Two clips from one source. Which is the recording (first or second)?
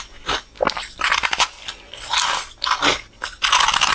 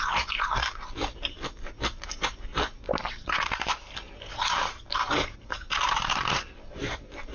first